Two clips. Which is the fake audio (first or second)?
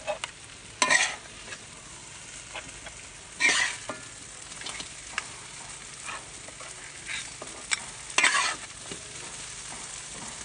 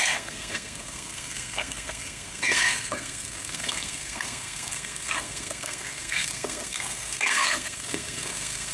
second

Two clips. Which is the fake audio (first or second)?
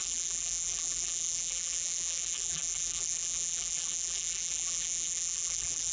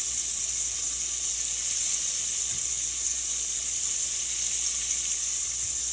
first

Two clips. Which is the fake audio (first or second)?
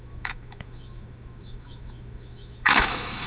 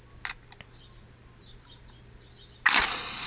first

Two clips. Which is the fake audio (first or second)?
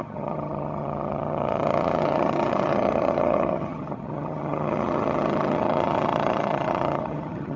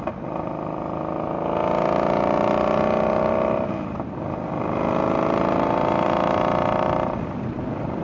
first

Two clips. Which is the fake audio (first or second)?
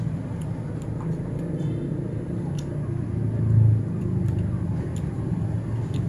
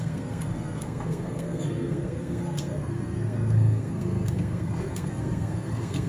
second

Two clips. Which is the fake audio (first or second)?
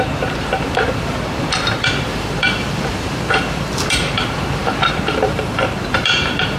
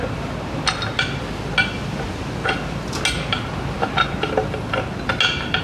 first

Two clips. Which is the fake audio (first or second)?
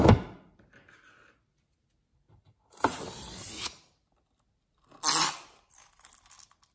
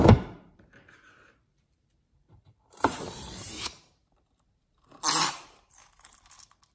second